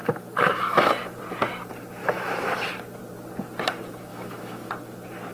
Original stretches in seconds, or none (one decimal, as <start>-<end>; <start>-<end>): 0.9-2.0; 2.7-4.1; 4.7-5.3